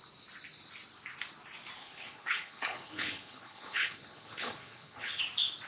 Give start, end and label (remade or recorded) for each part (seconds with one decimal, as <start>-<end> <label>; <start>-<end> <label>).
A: 0.0-1.8 recorded; 1.8-5.2 remade; 5.2-5.7 recorded

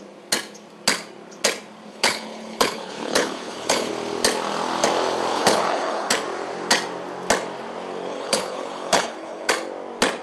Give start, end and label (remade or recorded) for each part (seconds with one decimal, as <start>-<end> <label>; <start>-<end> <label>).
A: 0.0-1.9 recorded; 1.9-3.9 remade; 3.9-5.3 recorded; 5.3-6.1 remade; 6.1-8.1 recorded; 8.1-9.5 remade; 9.5-10.2 recorded